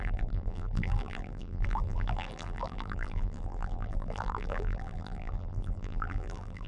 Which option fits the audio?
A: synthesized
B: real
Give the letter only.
A